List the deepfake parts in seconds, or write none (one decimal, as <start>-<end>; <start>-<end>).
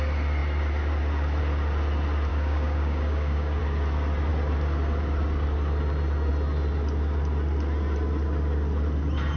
2.3-3.6